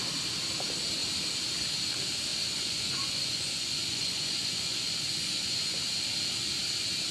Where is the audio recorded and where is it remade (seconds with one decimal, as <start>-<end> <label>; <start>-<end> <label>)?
0.0-2.3 recorded; 2.3-5.8 remade; 5.8-7.1 recorded